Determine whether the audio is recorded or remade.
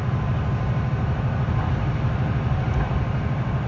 recorded